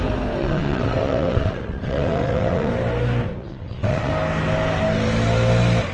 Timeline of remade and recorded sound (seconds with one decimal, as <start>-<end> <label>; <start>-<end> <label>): 0.0-0.4 recorded; 0.4-2.7 remade; 2.7-3.4 recorded; 3.4-4.1 remade; 4.1-5.9 recorded